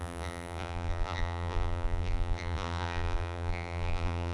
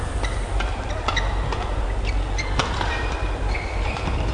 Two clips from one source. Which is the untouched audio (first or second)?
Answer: second